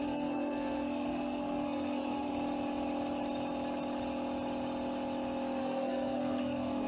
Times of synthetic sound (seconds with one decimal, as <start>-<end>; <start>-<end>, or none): 0.0-2.3; 5.6-6.9